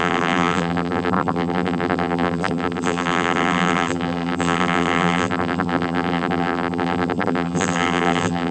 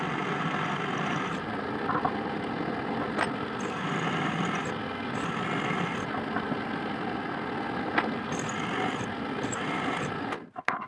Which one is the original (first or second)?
second